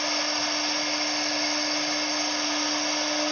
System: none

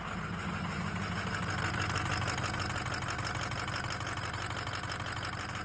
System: none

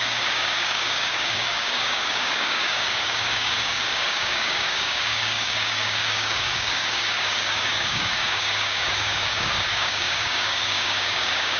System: codec, DAC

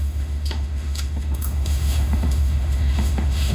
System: autoencoder, DAC-VAE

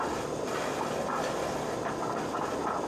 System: none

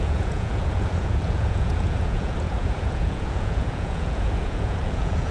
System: vocoder, Vocos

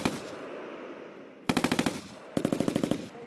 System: none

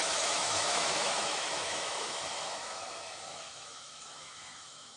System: autoencoder, DAC-VAE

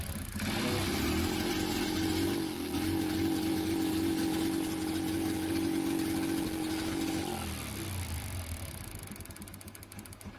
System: none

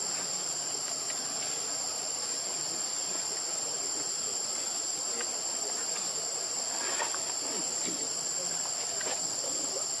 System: vocoder, BigVGAN v2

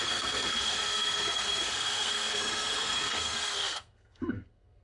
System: codec, SNAC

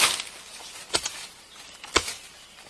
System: none